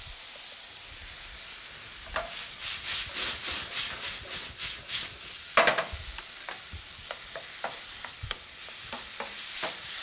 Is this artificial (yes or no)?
no